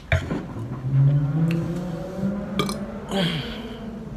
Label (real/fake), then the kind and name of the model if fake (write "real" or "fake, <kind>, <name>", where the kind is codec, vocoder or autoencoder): real